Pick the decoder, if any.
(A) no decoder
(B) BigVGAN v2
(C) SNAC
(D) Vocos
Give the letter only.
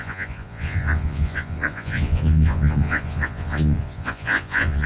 D